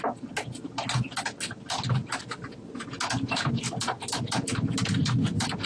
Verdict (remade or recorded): recorded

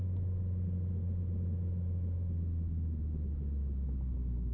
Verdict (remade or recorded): recorded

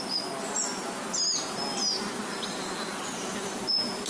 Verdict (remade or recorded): recorded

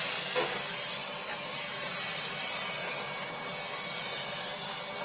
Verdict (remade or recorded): recorded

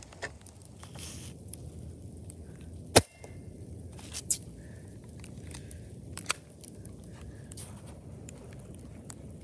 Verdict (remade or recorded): recorded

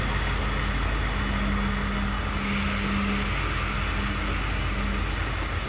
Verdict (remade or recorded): recorded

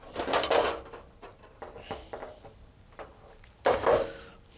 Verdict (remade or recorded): recorded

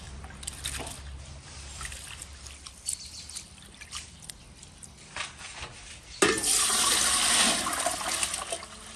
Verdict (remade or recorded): recorded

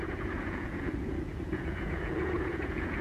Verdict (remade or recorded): remade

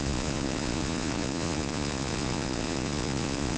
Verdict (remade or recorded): remade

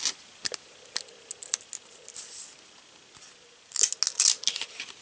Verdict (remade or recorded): recorded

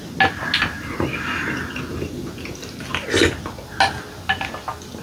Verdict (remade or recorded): recorded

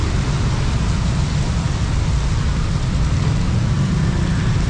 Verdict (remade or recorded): recorded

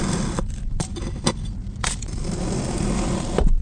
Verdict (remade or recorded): remade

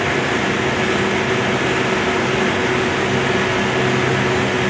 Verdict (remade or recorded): recorded